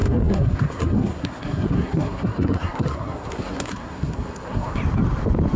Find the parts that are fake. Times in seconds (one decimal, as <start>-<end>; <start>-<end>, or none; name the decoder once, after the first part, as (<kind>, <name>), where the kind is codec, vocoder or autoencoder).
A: 0.0-4.8 (codec, SNAC)